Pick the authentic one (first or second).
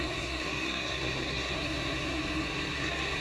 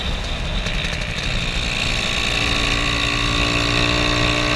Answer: second